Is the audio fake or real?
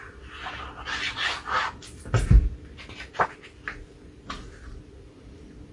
real